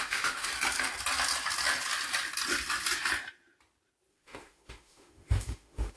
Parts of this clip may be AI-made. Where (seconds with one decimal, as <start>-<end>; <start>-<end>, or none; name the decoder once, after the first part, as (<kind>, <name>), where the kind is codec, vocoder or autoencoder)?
0.0-0.5 (autoencoder, DAC-VAE); 4.1-6.0